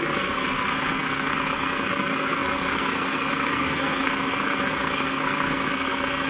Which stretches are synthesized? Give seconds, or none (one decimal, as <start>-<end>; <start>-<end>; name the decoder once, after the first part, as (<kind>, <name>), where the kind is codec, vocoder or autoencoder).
0.0-6.3 (codec, SNAC)